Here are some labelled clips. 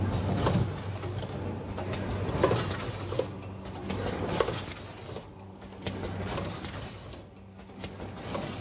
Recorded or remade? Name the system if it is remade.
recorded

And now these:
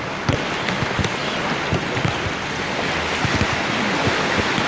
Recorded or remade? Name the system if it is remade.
recorded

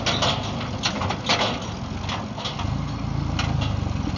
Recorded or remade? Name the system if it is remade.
recorded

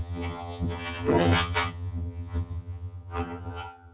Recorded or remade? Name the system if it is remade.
remade, vocoder, HiFi-GAN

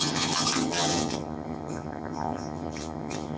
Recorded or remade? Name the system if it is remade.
remade, vocoder, HiFi-GAN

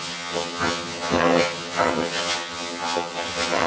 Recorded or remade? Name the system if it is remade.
remade, vocoder, HiFi-GAN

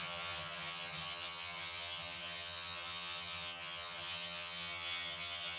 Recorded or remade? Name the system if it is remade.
remade, vocoder, HiFi-GAN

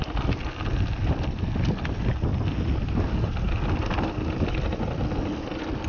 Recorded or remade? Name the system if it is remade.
recorded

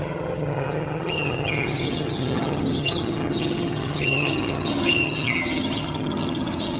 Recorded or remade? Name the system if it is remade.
remade, vocoder, HiFi-GAN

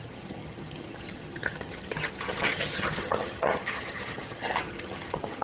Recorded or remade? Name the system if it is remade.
remade, vocoder, HiFi-GAN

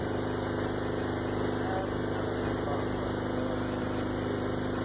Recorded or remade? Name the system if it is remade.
recorded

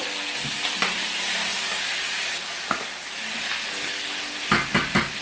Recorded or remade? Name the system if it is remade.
recorded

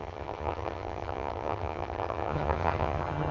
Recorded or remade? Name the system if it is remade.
remade, vocoder, HiFi-GAN